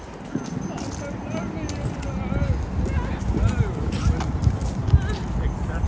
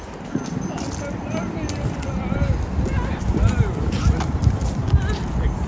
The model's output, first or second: second